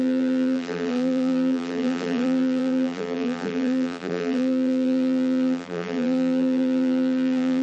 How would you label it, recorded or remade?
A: remade